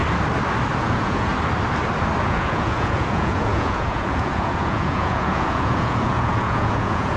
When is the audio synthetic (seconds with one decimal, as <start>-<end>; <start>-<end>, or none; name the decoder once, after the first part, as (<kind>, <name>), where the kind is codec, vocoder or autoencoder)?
0.8-1.3 (vocoder, Vocos); 2.2-7.2